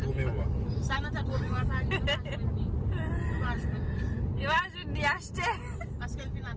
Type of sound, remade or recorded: recorded